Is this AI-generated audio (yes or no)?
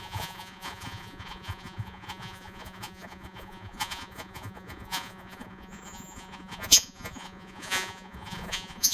yes